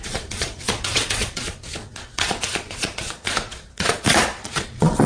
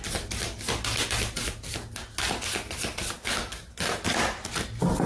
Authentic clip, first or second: second